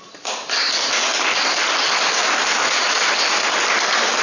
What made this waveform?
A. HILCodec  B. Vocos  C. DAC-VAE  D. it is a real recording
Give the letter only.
D